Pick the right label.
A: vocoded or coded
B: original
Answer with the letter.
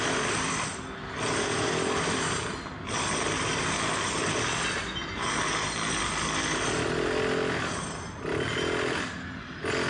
B